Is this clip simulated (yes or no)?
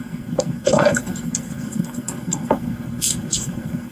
yes